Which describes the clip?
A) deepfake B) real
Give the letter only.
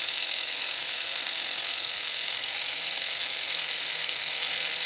A